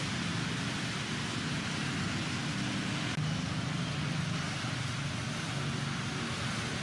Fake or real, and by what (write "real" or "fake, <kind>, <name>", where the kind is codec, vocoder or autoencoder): real